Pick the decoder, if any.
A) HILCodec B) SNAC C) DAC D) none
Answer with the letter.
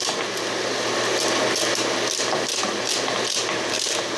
D